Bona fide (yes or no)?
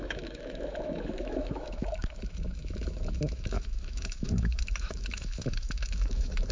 no